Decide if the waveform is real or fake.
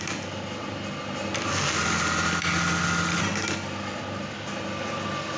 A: real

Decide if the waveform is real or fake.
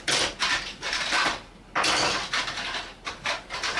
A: fake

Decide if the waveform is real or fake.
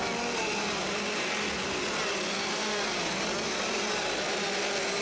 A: real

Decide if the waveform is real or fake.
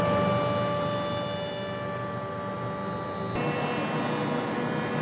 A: real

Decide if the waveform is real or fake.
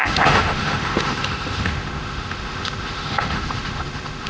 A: fake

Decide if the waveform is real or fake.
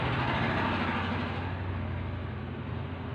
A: real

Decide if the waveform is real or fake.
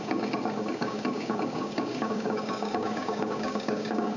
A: fake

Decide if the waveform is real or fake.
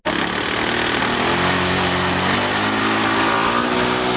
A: real